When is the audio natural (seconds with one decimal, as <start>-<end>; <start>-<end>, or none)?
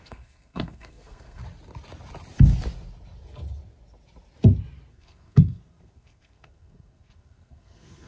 1.4-4.9